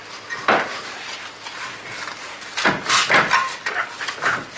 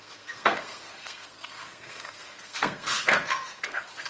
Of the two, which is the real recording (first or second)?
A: first